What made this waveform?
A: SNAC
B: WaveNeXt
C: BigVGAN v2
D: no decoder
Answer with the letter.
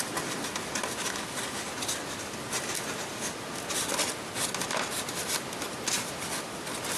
D